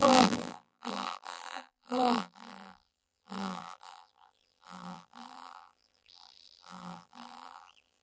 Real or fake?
fake